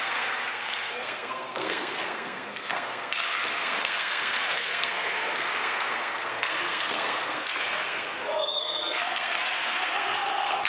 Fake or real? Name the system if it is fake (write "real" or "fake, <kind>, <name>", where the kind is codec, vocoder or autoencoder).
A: fake, codec, SNAC